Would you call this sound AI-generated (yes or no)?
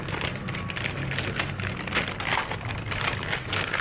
no